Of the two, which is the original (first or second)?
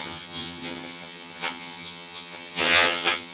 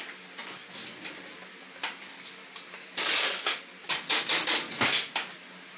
second